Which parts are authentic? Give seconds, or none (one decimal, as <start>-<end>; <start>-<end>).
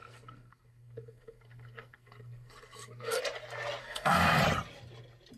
3.2-3.8; 4.4-5.4